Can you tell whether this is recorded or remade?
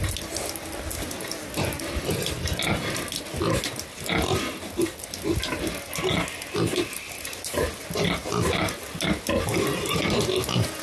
recorded